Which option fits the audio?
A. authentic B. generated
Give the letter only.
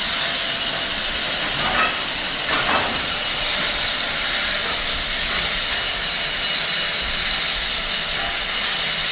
A